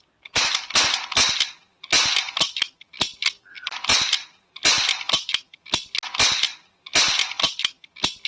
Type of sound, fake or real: real